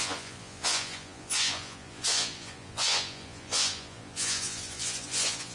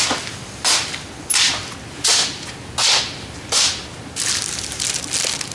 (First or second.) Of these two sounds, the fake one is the first